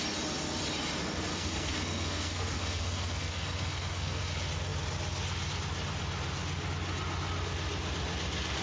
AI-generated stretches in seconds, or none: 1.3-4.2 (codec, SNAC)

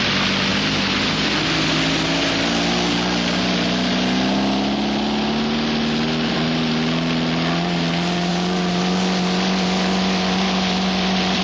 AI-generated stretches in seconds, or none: none

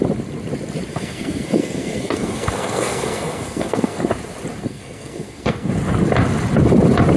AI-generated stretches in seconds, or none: 0.9-4.1 (codec, SNAC); 4.6-5.7

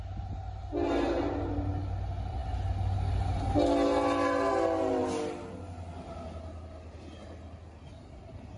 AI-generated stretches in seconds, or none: none